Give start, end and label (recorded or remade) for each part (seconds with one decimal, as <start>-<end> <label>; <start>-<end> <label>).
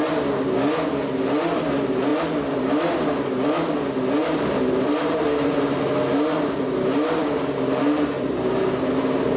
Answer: 0.0-4.2 recorded; 4.2-5.8 remade; 5.8-7.2 recorded; 7.2-9.4 remade